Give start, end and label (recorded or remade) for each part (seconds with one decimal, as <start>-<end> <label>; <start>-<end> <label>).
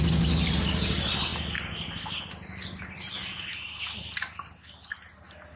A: 0.0-5.6 recorded